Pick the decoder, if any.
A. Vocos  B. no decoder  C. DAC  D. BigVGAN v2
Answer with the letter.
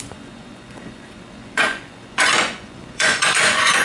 A